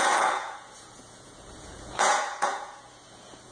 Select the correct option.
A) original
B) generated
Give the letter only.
B